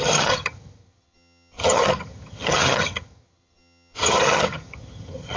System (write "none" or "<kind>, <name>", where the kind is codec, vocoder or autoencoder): vocoder, HiFi-GAN